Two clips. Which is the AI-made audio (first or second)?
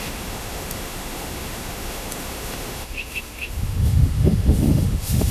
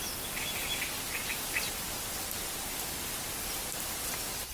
first